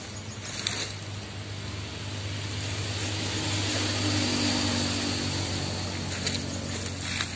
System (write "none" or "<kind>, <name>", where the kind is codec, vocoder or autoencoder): none